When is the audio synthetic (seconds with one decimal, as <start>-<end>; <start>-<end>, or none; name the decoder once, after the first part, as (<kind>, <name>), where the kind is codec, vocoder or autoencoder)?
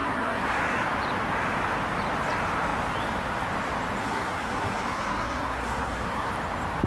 0.0-0.6 (codec, SNAC); 4.0-6.3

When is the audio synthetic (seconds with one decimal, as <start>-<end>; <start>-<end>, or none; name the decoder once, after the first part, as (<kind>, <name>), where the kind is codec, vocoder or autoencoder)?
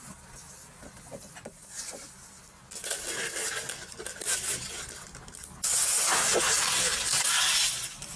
none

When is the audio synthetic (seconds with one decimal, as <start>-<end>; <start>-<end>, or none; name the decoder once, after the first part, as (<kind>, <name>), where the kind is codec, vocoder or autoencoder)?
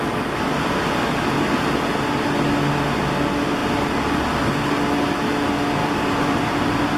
5.8-7.0 (vocoder, BigVGAN v2)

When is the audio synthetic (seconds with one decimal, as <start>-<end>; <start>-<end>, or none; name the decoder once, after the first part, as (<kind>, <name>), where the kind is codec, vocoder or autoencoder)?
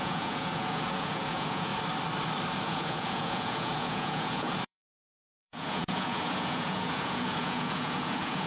0.0-1.7 (vocoder, Vocos); 2.6-8.5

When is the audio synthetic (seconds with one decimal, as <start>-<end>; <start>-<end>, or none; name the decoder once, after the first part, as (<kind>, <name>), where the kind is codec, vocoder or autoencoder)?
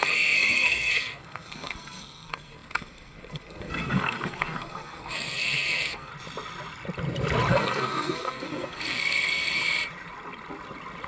0.0-6.1 (codec, SNAC); 7.5-9.6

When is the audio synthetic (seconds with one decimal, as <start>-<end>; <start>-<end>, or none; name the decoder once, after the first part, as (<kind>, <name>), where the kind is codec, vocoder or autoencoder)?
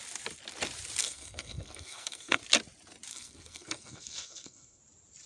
1.0-2.4 (codec, SNAC); 3.1-4.8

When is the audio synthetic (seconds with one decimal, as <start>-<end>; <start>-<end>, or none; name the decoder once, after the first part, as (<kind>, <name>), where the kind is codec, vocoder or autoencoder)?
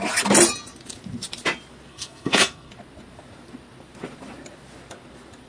1.9-2.7 (codec, SNAC)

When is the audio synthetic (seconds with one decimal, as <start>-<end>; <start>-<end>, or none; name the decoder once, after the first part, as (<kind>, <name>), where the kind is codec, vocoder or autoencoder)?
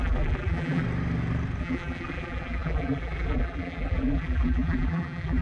0.0-0.8 (vocoder, BigVGAN v2); 1.6-5.4